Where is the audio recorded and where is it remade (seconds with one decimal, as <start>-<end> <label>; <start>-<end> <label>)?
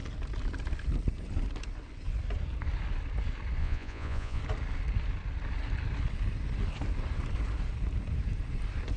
0.0-3.6 recorded; 3.6-4.4 remade; 4.4-9.0 recorded